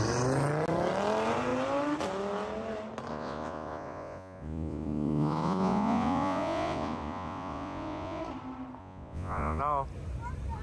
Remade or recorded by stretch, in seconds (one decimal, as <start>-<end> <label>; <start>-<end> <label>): 0.0-3.1 recorded; 3.1-8.2 remade; 8.2-8.8 recorded; 8.8-9.6 remade; 9.6-10.6 recorded